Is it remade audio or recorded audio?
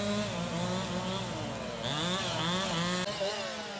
recorded